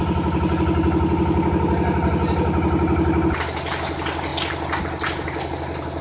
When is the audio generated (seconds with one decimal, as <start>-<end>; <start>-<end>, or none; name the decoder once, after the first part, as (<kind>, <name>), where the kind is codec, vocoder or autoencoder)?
none

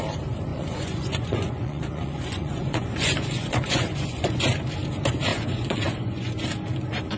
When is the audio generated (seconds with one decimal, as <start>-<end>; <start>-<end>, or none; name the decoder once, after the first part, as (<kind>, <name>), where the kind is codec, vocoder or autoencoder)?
0.5-4.4 (vocoder, Vocos); 5.3-6.3

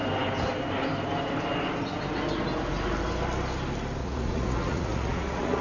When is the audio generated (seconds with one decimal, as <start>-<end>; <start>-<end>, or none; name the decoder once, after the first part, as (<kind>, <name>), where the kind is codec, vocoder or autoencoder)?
4.0-5.6 (vocoder, Vocos)

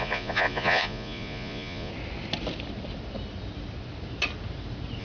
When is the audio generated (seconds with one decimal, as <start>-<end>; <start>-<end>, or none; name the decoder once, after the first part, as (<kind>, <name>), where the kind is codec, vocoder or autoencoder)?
0.0-1.9 (vocoder, Vocos)

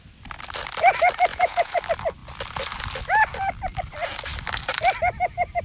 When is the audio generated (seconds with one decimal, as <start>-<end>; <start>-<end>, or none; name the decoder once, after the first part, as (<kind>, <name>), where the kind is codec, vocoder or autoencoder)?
1.3-1.8 (vocoder, Vocos)